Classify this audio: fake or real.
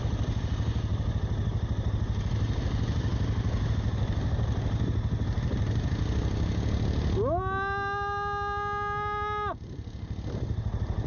real